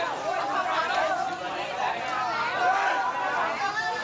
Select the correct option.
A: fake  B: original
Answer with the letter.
B